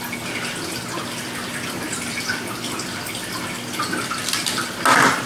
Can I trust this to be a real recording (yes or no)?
yes